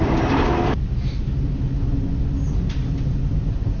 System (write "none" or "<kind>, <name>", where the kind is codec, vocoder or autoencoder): none